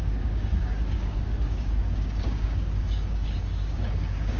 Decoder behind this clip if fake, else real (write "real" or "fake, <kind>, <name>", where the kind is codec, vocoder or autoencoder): fake, codec, DAC